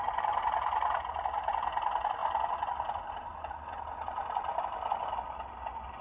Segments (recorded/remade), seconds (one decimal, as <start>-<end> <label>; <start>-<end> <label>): 0.0-6.0 recorded